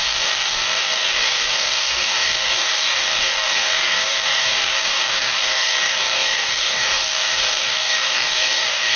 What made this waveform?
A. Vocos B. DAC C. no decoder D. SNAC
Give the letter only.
B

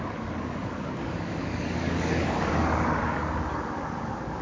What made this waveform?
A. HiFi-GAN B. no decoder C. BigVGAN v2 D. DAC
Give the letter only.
D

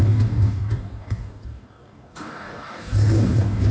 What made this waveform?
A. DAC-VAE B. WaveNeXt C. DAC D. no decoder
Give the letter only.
C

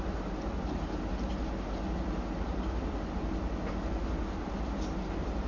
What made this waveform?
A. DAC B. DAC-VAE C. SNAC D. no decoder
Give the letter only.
D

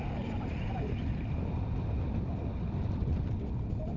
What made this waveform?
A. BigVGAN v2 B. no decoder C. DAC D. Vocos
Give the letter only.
B